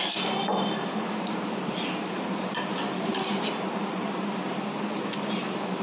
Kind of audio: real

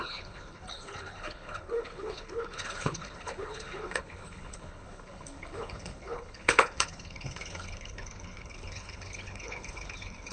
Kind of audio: fake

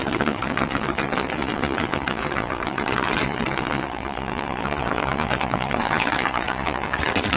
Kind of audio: fake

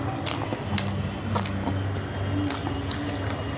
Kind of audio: real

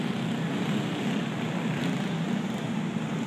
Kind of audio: real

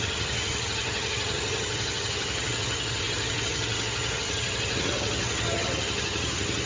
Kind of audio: fake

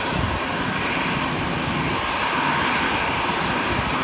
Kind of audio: real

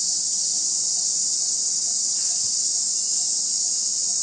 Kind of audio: real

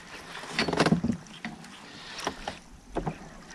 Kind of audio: real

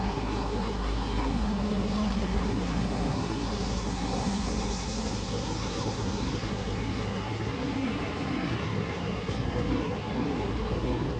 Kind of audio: fake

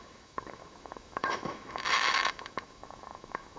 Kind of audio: fake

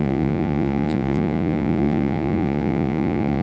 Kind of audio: fake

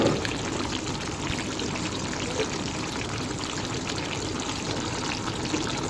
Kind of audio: real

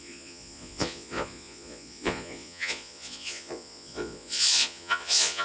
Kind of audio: fake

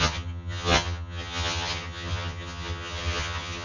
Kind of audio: fake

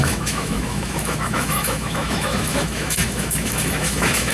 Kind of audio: fake